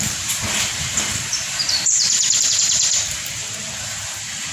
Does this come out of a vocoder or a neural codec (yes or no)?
yes